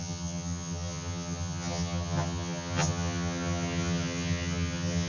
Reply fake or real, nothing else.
fake